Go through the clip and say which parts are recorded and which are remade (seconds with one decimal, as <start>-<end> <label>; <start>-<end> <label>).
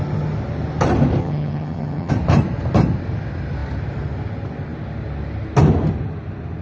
0.0-1.2 recorded; 1.2-2.1 remade; 2.1-6.6 recorded